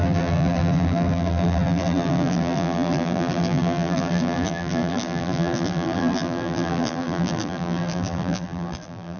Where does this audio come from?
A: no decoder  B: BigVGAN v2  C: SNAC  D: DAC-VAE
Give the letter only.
B